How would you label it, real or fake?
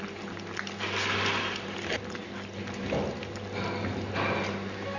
real